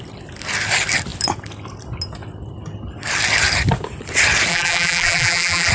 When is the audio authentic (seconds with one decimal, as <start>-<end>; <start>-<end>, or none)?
0.0-4.5